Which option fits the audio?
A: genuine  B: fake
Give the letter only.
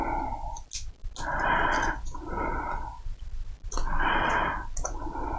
A